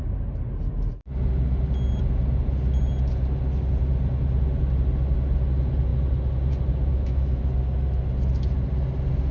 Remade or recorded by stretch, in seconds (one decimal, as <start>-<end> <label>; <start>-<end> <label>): 0.0-6.9 recorded; 6.9-7.4 remade; 7.4-9.3 recorded